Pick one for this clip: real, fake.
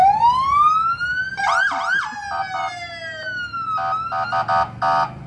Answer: real